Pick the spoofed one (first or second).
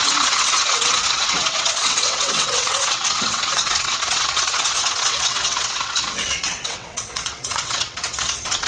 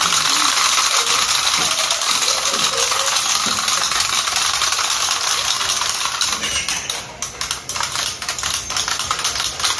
first